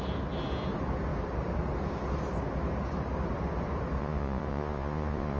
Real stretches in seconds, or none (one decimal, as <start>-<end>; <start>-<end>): 0.0-4.0